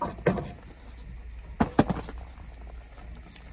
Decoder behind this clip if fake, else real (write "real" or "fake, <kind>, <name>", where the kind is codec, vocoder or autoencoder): real